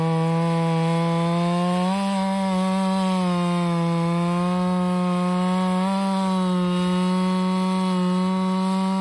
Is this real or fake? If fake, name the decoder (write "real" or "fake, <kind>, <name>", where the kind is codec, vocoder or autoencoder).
real